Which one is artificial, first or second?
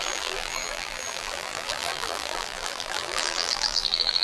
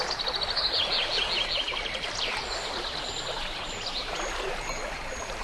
first